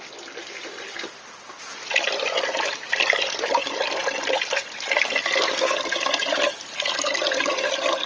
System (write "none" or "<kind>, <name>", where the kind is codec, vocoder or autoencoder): none